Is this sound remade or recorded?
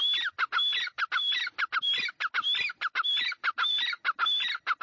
recorded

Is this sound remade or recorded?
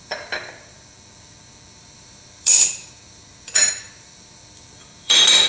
remade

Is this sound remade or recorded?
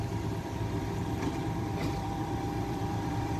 remade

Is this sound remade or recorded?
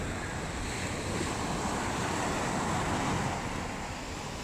recorded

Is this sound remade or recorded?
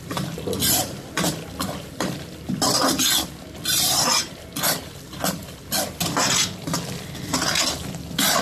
recorded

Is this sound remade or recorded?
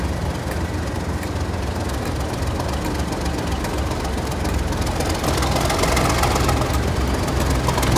recorded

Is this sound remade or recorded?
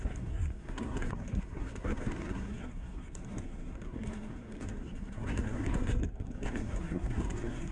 remade